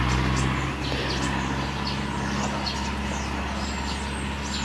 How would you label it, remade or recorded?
recorded